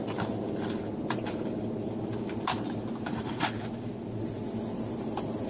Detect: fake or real real